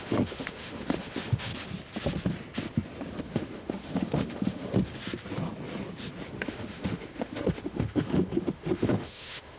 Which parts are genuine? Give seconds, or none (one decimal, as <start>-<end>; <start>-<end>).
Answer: 1.5-3.2; 4.7-6.3